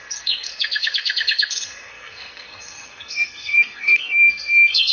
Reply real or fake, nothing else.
fake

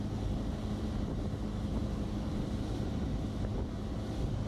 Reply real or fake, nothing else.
real